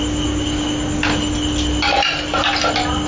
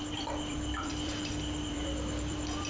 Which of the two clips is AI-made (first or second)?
second